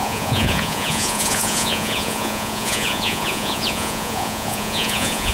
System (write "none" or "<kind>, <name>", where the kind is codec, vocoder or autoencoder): vocoder, Vocos